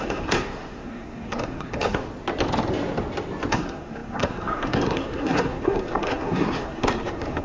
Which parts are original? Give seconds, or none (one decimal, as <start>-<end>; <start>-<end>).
2.0-3.5